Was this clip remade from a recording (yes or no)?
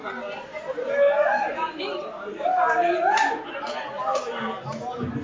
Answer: no